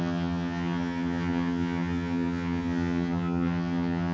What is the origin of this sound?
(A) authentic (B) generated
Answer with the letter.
B